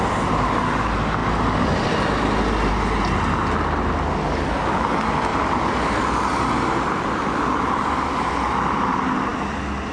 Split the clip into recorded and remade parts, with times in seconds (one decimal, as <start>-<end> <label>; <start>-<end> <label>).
0.0-5.3 recorded; 5.3-8.2 remade; 8.2-9.9 recorded

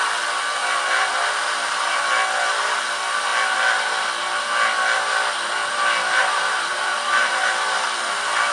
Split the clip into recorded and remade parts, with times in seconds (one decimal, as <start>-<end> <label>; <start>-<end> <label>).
0.0-0.6 recorded; 0.6-2.0 remade; 2.0-6.2 recorded; 6.2-7.5 remade; 7.5-8.5 recorded

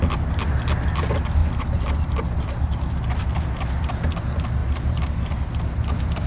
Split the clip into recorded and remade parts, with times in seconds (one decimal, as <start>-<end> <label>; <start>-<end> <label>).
0.0-1.4 recorded; 1.4-3.2 remade; 3.2-4.6 recorded; 4.6-5.1 remade; 5.1-6.3 recorded

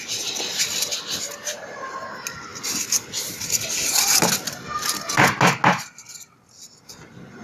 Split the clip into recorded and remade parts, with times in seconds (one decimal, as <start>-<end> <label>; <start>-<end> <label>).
0.0-7.4 recorded

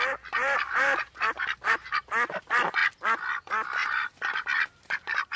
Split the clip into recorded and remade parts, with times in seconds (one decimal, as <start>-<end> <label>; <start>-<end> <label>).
0.0-0.7 recorded; 0.7-2.0 remade; 2.0-3.8 recorded; 3.8-5.4 remade

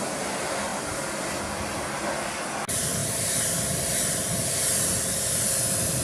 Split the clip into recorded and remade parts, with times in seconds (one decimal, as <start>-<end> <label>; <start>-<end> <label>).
0.0-3.0 recorded; 3.0-4.5 remade; 4.5-6.0 recorded